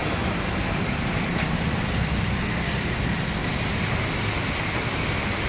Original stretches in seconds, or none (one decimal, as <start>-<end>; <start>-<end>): 1.3-3.4; 3.9-5.5